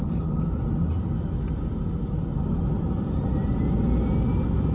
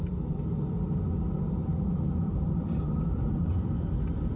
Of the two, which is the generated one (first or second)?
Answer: second